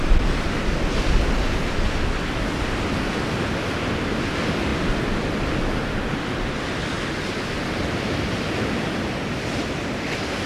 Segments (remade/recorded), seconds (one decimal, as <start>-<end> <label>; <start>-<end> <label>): 0.0-10.5 recorded